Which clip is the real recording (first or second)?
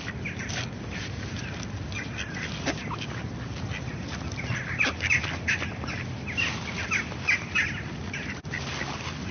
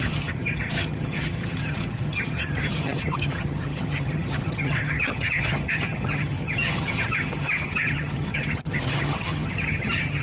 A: first